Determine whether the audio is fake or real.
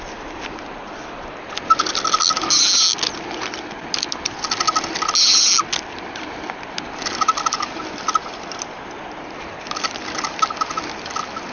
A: real